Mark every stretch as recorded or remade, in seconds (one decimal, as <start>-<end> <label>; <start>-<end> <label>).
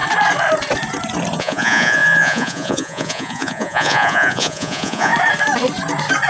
0.0-1.4 recorded; 1.4-5.1 remade; 5.1-6.3 recorded